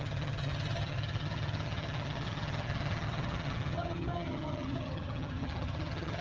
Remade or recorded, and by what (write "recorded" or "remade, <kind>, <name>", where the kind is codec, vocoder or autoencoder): remade, vocoder, HiFi-GAN